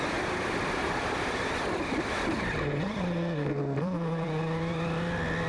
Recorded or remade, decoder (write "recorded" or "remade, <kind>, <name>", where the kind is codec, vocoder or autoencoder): remade, vocoder, BigVGAN v2